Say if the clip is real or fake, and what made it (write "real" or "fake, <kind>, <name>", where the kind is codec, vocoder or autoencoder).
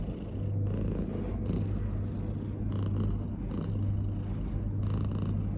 real